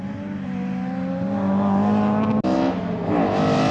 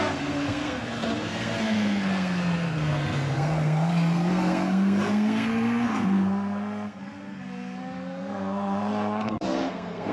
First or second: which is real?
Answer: first